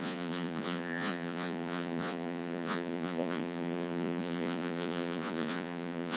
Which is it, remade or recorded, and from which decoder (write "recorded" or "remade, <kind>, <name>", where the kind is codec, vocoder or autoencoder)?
remade, vocoder, Vocos